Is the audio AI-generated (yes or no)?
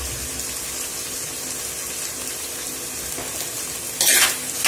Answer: no